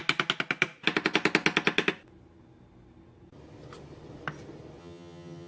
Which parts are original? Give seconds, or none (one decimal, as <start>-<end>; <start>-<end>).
0.0-4.8

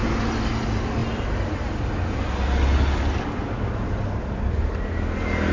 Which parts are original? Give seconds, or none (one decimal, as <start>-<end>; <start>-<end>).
0.0-5.5

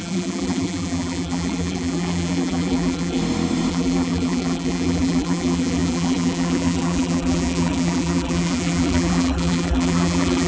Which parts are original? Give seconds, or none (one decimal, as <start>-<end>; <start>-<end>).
3.2-3.7

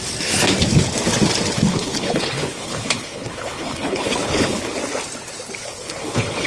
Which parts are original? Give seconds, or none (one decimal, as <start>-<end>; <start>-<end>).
0.0-1.7; 4.7-5.6